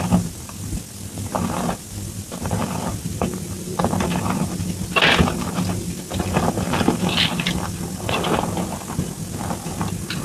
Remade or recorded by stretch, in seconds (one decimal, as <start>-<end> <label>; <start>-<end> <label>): 0.0-2.6 recorded; 2.6-3.8 remade; 3.8-10.2 recorded